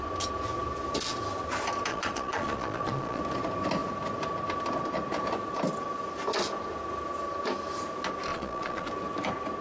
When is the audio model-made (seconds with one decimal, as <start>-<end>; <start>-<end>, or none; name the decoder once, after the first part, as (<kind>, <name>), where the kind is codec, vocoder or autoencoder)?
1.9-3.2 (vocoder, Vocos); 8.3-8.9